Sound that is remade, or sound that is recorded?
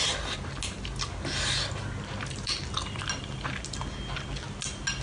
recorded